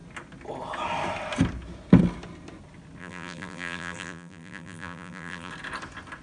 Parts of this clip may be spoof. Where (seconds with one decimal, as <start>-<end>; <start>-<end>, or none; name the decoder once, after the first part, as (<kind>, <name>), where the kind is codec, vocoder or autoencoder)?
3.0-5.5 (vocoder, BigVGAN v2)